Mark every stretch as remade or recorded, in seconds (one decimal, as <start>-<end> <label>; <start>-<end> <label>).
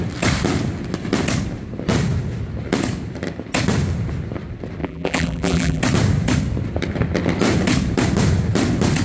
0.0-4.8 recorded; 4.8-5.8 remade; 5.8-9.0 recorded